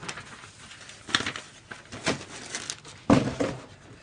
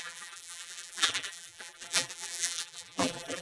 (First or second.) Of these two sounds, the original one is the first